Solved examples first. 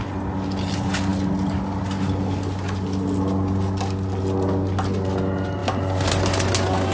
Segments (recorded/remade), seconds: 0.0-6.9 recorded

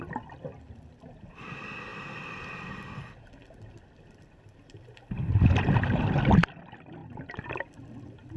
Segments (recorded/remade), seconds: 0.0-1.9 recorded; 1.9-2.8 remade; 2.8-8.4 recorded

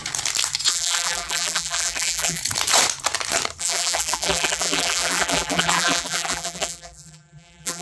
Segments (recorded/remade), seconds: 0.0-0.7 recorded; 0.7-2.4 remade; 2.4-3.6 recorded; 3.6-7.8 remade

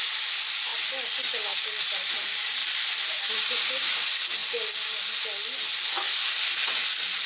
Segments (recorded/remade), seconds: 0.0-0.7 remade; 0.7-1.9 recorded; 1.9-2.6 remade; 2.6-3.3 recorded; 3.3-4.4 remade; 4.4-7.3 recorded

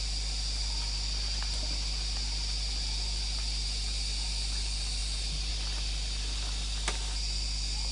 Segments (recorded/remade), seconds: 0.0-7.9 recorded